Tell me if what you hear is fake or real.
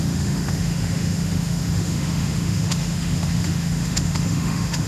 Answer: fake